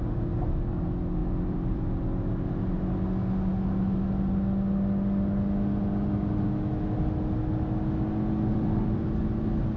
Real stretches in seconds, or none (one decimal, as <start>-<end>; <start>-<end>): 0.0-1.2; 2.3-8.5; 9.1-9.8